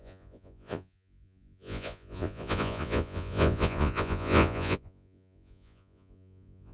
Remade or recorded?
remade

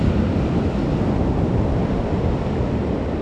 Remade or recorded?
recorded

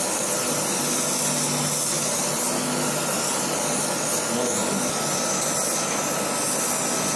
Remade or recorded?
recorded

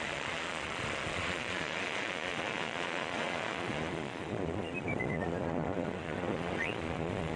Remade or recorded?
remade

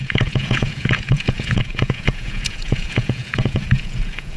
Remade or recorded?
remade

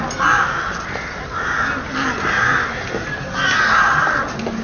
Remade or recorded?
recorded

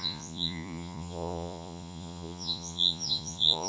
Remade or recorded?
remade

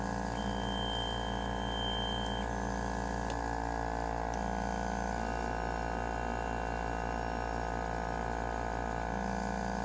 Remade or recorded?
recorded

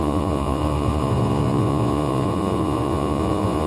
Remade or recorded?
remade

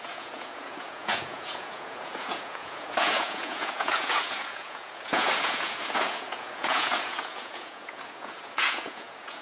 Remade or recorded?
remade